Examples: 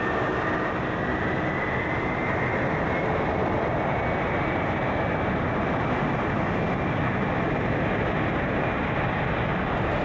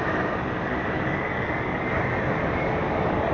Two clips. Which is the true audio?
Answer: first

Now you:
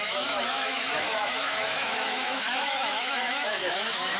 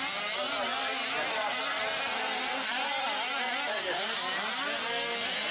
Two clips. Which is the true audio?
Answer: second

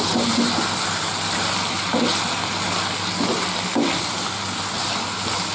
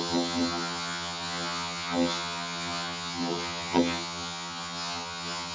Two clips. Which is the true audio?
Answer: first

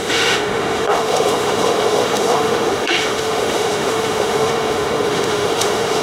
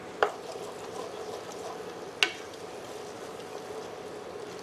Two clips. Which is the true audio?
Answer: second